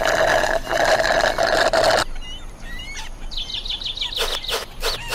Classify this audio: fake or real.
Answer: real